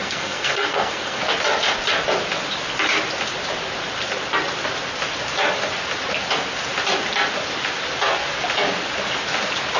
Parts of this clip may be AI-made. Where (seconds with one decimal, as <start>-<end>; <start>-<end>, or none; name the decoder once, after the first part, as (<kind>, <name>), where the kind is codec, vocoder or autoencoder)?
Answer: 0.0-1.2 (codec, SNAC)